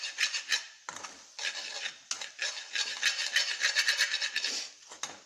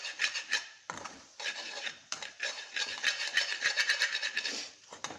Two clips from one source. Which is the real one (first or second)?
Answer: first